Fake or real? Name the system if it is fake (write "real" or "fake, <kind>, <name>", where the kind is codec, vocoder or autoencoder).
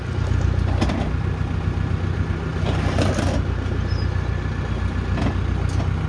real